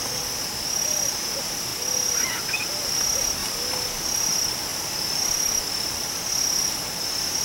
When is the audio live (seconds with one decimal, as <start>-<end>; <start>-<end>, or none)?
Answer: 0.0-1.7; 2.8-4.7; 5.7-7.4